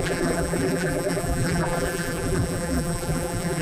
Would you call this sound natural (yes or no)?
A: no